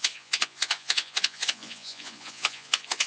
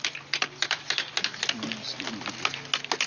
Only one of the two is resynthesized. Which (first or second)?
first